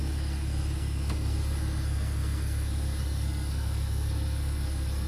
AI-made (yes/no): yes